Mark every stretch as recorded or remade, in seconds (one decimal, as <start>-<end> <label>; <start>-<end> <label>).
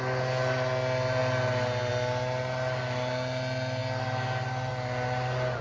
0.0-5.6 recorded